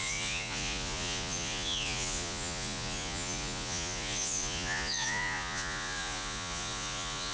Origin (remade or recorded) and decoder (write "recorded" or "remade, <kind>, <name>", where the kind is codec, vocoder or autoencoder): remade, vocoder, Vocos